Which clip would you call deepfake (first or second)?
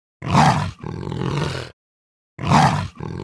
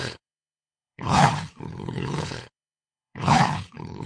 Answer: second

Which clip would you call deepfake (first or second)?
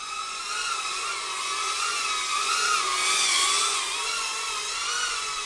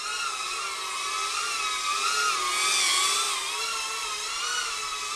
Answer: first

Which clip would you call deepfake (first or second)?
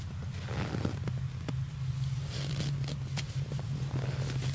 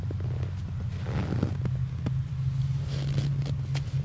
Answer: first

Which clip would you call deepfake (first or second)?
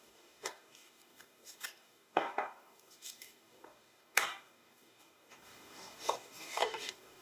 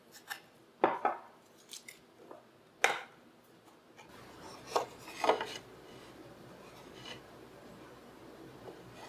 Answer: first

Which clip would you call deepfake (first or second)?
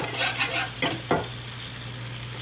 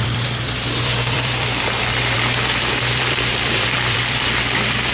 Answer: second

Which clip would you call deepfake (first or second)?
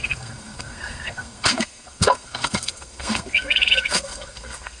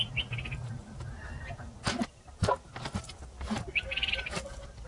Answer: first